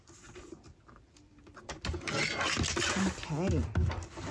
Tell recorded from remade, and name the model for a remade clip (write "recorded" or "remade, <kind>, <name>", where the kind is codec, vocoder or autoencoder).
recorded